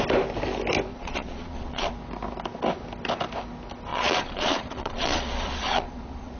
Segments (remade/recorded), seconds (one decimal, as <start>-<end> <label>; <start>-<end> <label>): 0.0-0.9 recorded; 0.9-1.9 remade; 1.9-3.9 recorded; 3.9-6.4 remade